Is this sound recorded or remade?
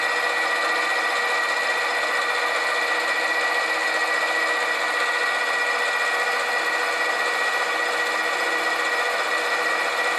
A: recorded